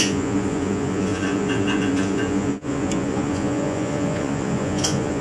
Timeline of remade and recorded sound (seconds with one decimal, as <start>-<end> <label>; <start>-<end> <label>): 0.0-5.2 remade

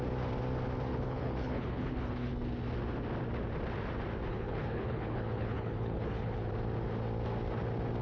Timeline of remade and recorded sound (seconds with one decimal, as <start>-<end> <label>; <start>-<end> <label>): 0.0-0.9 recorded; 0.9-2.3 remade; 2.3-4.3 recorded; 4.3-6.5 remade; 6.5-8.0 recorded

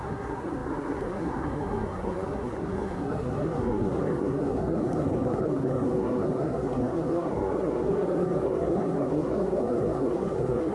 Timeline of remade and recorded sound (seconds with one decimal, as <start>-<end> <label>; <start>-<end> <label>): 0.0-10.7 remade

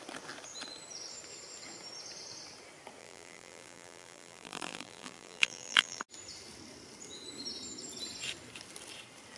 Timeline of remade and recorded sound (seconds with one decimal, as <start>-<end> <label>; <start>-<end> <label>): 0.0-3.0 recorded; 3.0-6.0 remade; 6.0-9.4 recorded

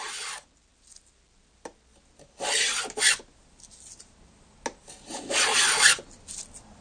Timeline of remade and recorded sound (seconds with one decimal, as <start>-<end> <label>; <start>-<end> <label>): 0.0-6.8 recorded

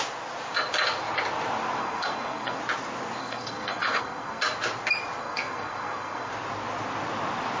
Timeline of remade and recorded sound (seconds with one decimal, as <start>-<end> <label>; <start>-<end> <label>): 0.0-1.8 recorded; 1.8-2.6 remade; 2.6-3.2 recorded; 3.2-4.4 remade; 4.4-5.2 recorded; 5.2-6.3 remade; 6.3-7.6 recorded

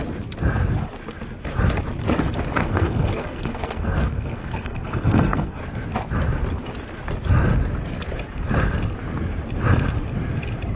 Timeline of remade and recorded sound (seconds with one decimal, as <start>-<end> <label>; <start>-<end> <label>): 0.0-2.6 recorded; 2.6-5.6 remade; 5.6-10.8 recorded

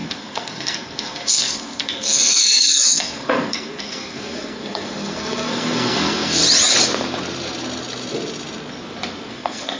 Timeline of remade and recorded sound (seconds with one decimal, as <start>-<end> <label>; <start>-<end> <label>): 0.0-6.4 remade; 6.4-9.3 recorded; 9.3-9.8 remade